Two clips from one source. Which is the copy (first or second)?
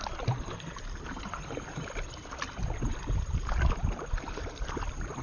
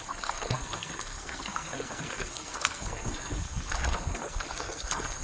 second